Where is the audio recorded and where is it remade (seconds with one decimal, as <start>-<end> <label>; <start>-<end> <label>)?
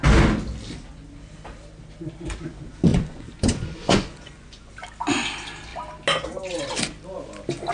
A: 0.0-2.9 recorded; 2.9-4.7 remade; 4.7-7.7 recorded